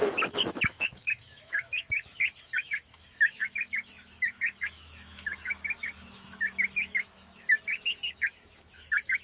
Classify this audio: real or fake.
fake